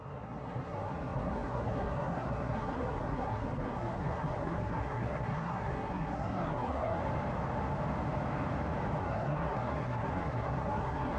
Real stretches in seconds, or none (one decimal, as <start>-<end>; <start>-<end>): 7.0-9.0